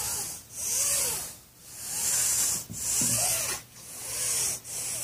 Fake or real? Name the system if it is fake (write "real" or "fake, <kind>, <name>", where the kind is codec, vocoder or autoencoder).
real